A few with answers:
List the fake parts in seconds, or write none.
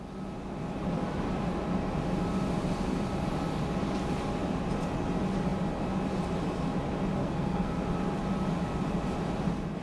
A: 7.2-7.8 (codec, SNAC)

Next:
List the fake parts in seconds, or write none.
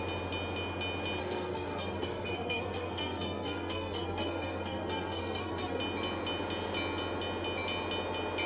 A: 1.2-5.8 (codec, SNAC)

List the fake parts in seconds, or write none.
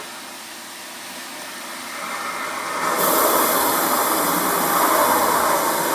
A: none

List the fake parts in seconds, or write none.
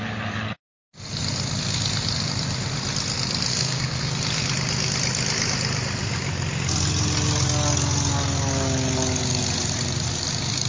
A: 3.5-4.1 (codec, SNAC)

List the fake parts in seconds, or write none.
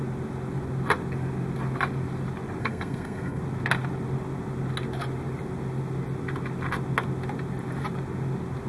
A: 2.6-3.4 (codec, SNAC)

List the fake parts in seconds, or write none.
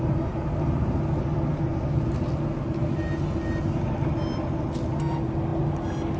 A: none